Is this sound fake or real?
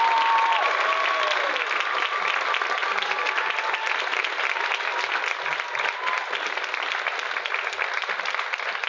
real